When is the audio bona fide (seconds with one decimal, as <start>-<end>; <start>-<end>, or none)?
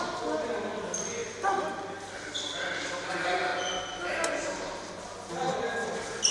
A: 1.2-2.1